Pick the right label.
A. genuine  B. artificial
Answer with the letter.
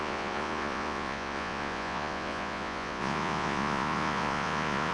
B